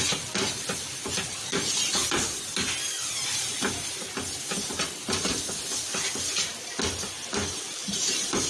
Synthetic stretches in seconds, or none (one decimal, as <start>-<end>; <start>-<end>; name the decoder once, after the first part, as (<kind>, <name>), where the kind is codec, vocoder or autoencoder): 7.8-8.5 (vocoder, BigVGAN v2)